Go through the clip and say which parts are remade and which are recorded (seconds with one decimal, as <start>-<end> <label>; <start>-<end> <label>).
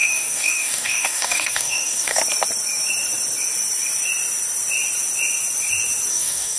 0.0-2.2 remade; 2.2-6.1 recorded; 6.1-6.6 remade